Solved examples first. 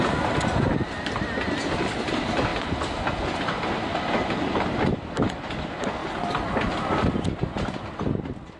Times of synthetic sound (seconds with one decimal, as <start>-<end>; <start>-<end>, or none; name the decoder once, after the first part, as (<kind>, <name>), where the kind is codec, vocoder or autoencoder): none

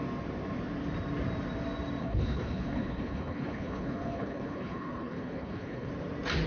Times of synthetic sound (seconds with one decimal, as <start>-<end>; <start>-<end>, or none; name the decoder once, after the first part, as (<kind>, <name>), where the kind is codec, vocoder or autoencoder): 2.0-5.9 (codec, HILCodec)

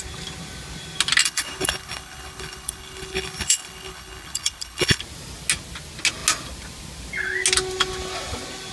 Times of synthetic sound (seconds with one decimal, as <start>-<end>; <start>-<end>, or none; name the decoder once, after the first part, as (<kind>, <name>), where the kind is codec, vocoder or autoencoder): 1.2-5.0 (codec, HILCodec)

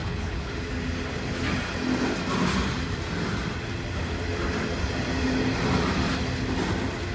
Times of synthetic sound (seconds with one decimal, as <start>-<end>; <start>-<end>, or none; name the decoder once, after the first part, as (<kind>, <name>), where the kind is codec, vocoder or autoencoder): 0.0-0.5 (codec, HILCodec)